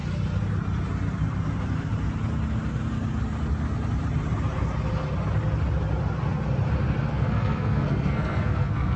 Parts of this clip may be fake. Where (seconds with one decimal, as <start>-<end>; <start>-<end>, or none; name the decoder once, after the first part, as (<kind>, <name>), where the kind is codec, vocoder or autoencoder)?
7.1-9.0 (codec, SNAC)